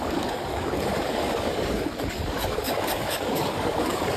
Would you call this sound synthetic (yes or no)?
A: yes